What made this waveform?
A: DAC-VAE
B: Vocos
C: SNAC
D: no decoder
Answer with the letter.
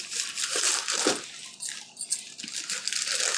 D